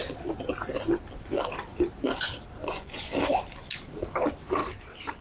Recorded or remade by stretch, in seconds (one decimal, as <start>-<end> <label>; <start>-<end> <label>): 0.0-2.6 recorded; 2.6-3.1 remade; 3.1-5.2 recorded